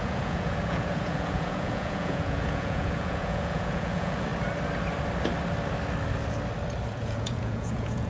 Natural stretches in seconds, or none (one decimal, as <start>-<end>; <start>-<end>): 4.3-6.9